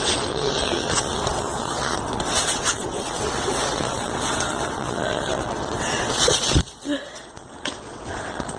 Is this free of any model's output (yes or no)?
no